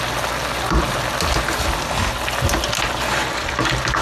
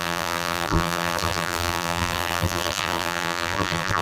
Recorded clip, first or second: first